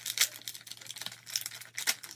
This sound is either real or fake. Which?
real